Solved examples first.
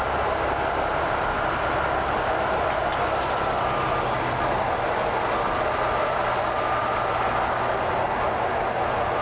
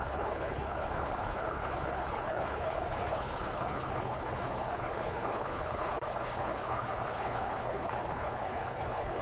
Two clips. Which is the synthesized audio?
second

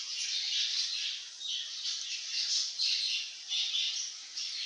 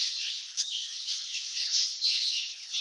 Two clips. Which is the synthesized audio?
second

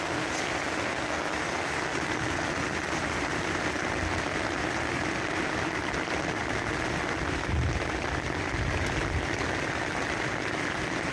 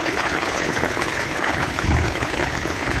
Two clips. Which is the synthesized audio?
second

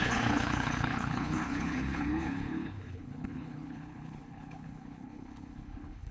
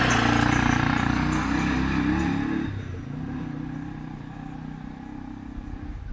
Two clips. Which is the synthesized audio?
first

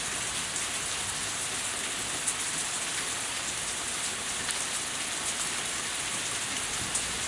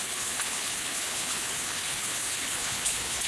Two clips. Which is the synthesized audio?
second